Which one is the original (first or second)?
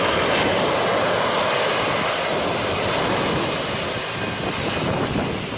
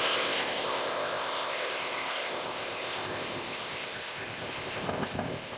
first